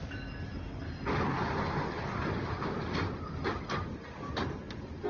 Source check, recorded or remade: recorded